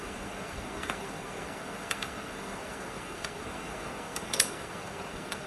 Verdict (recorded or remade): remade